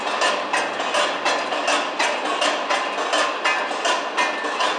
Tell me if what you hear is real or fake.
real